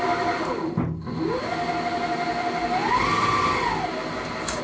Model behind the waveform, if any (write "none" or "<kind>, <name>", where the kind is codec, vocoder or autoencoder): none